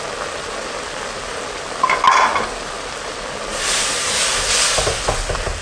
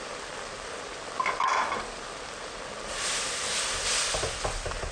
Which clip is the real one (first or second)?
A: first